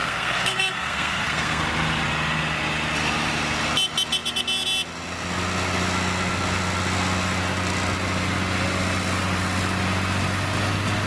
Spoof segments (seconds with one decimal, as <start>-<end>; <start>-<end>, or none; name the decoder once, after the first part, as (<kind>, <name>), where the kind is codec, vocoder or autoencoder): 0.0-1.6 (codec, SNAC)

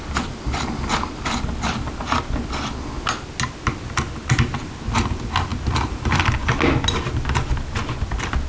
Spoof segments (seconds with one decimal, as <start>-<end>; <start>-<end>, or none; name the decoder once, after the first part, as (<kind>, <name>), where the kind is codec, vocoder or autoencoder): none